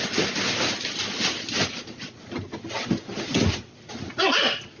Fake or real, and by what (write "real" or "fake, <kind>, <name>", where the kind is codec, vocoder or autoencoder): real